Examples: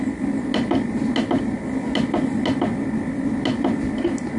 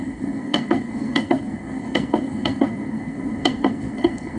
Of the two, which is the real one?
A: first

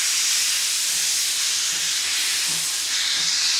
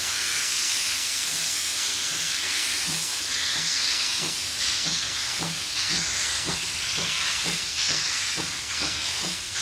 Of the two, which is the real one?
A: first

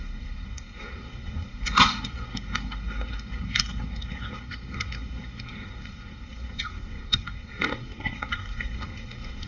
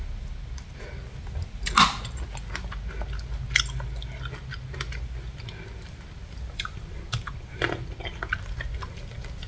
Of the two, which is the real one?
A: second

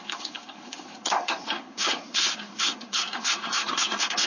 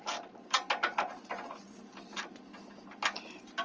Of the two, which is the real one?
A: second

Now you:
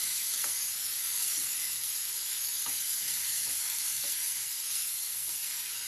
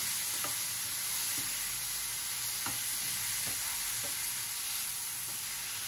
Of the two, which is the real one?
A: second